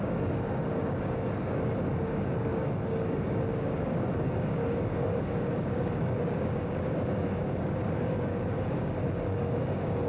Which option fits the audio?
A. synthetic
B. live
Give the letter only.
A